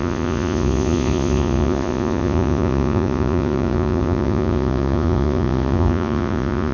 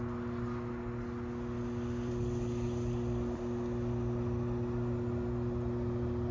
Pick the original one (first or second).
second